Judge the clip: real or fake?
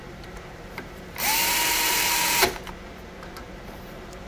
fake